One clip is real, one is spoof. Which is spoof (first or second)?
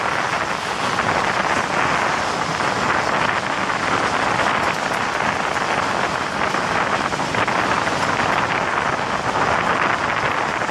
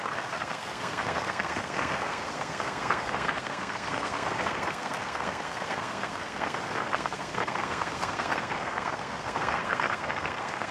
second